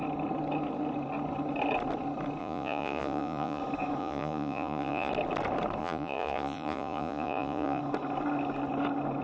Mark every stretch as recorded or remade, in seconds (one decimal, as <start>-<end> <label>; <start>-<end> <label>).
0.0-2.4 recorded; 2.4-3.6 remade; 3.6-4.0 recorded; 4.0-5.1 remade; 5.1-5.8 recorded; 5.8-7.8 remade; 7.8-9.2 recorded

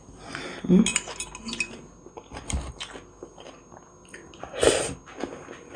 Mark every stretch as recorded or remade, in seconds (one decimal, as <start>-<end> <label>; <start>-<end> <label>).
0.0-5.8 recorded

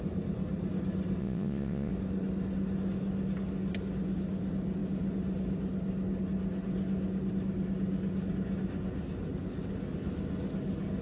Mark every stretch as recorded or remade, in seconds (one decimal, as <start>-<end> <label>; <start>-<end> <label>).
0.0-1.2 recorded; 1.2-1.9 remade; 1.9-11.0 recorded

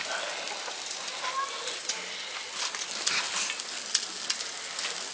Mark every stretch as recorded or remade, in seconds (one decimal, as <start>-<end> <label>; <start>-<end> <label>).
0.0-5.1 recorded